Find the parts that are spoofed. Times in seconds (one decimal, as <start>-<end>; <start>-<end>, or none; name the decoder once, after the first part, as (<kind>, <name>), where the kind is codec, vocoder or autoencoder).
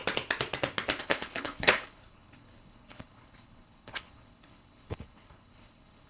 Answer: 1.0-6.1 (codec, HILCodec)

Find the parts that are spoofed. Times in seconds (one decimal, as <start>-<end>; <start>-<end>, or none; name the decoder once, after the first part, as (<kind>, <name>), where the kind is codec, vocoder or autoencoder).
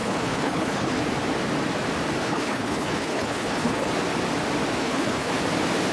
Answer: 0.0-1.0 (codec, HILCodec); 2.2-3.9; 4.8-5.3